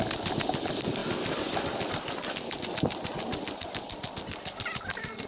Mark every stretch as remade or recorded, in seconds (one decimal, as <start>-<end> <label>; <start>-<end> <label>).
0.0-5.3 recorded